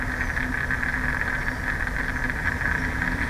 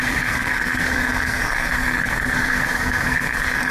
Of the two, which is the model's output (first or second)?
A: second